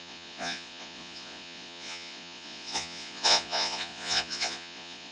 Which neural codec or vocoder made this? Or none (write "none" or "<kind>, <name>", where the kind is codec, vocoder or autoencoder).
vocoder, Vocos